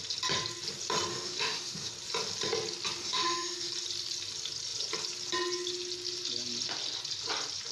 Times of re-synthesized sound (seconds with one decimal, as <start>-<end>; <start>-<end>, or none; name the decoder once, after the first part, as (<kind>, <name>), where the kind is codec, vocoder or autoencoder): 1.1-1.9 (autoencoder, DAC-VAE); 3.0-3.7